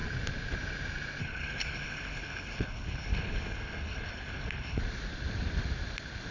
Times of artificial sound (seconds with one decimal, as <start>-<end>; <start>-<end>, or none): 1.2-4.8